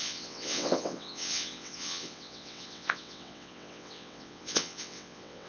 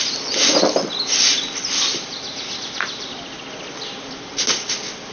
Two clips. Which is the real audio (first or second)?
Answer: second